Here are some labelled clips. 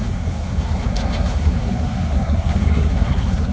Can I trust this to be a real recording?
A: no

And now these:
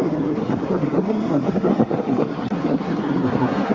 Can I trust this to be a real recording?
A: no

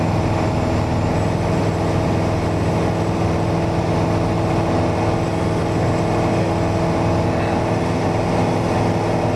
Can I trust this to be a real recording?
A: yes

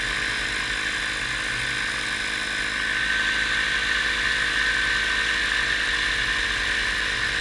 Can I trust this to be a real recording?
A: yes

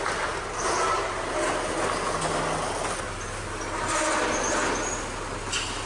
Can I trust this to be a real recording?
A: yes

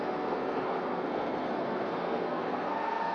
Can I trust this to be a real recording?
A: no